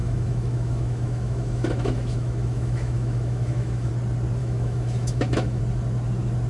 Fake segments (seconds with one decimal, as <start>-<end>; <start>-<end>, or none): 0.0-3.9; 4.4-5.6